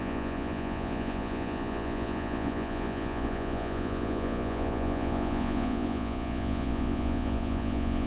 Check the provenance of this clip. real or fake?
fake